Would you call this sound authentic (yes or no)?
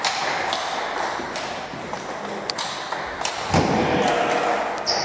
yes